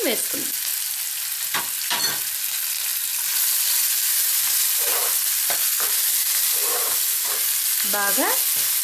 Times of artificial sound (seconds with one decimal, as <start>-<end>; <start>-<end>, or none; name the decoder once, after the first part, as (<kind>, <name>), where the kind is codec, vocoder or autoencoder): none